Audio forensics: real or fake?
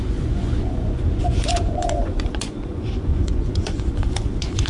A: fake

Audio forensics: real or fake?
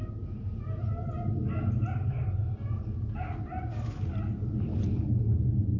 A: real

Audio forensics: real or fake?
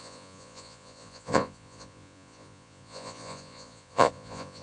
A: fake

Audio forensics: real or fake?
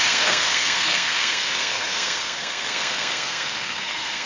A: fake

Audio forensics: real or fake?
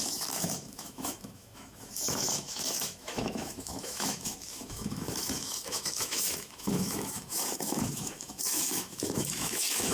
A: fake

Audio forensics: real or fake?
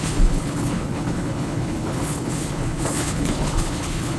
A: fake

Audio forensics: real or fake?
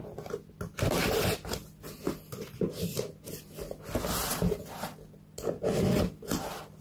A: real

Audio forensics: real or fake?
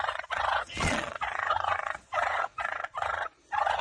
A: fake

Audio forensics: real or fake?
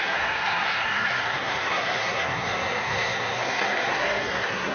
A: fake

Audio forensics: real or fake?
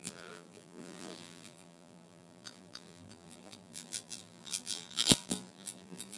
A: fake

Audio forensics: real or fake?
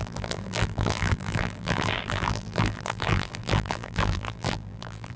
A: fake